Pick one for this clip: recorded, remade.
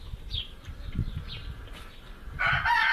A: recorded